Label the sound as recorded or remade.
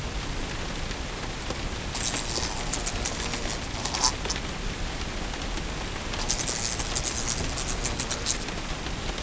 recorded